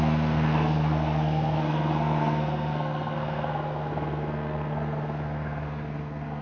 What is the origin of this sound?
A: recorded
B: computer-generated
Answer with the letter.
B